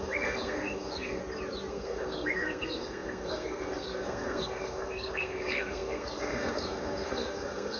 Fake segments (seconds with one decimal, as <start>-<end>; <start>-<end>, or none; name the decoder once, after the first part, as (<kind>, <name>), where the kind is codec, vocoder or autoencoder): 0.0-1.2 (codec, SNAC); 1.7-7.8